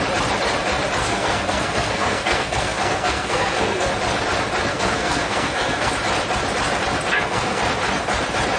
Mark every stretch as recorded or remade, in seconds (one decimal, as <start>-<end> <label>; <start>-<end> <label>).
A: 0.0-1.0 recorded; 1.0-3.9 remade; 3.9-4.7 recorded; 4.7-5.9 remade; 5.9-7.1 recorded; 7.1-7.6 remade; 7.6-8.6 recorded